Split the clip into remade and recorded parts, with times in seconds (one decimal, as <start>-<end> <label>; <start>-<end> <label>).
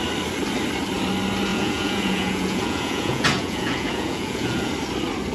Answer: 0.0-1.5 recorded; 1.5-4.7 remade; 4.7-5.3 recorded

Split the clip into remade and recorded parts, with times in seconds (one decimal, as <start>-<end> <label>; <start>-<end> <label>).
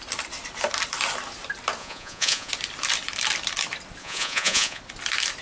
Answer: 0.0-1.8 recorded; 1.8-2.5 remade; 2.5-4.0 recorded; 4.0-4.8 remade; 4.8-5.4 recorded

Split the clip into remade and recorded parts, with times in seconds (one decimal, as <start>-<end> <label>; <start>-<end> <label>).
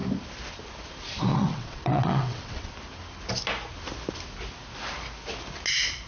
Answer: 0.0-1.3 recorded; 1.3-2.7 remade; 2.7-6.1 recorded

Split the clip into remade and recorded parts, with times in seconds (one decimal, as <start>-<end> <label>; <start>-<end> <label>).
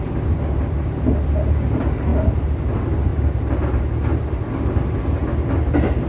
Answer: 0.0-2.1 recorded; 2.1-2.7 remade; 2.7-6.1 recorded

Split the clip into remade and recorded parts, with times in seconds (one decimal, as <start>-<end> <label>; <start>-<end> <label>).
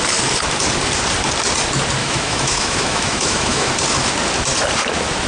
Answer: 0.0-2.0 recorded; 2.0-3.7 remade; 3.7-5.3 recorded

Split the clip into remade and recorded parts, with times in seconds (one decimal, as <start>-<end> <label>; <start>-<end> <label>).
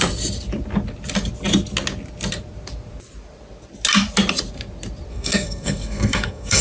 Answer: 0.0-5.1 recorded; 5.1-6.6 remade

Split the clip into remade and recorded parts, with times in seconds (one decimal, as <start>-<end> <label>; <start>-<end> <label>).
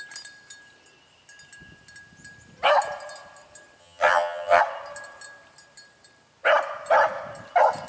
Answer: 0.0-3.8 recorded; 3.8-4.6 remade; 4.6-7.9 recorded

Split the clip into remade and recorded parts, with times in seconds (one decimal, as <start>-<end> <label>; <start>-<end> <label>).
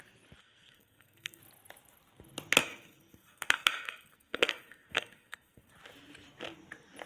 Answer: 0.0-0.4 recorded; 0.4-1.4 remade; 1.4-2.6 recorded; 2.6-5.7 remade; 5.7-7.1 recorded